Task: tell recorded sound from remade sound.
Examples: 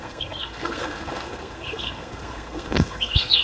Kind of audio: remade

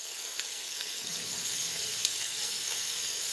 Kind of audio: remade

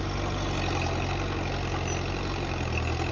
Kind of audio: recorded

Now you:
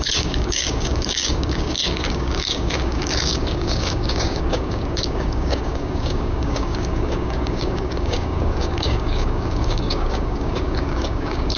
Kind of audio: remade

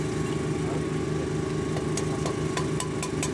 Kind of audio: recorded